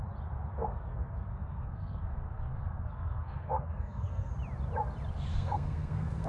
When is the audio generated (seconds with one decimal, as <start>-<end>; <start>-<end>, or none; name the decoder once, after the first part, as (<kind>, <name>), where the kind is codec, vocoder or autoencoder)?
0.5-4.3 (codec, SNAC); 5.3-6.3